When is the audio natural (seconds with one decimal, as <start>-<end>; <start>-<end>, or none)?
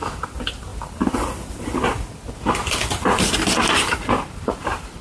0.0-5.0